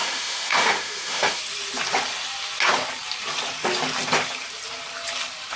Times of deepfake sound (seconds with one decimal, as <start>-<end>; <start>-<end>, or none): 0.0-1.4